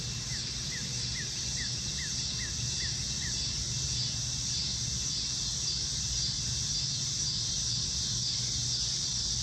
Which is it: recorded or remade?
recorded